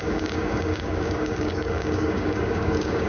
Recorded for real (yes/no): no